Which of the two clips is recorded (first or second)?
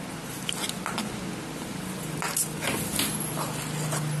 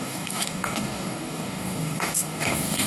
first